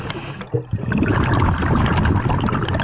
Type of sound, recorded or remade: recorded